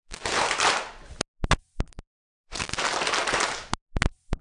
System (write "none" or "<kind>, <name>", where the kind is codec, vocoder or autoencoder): none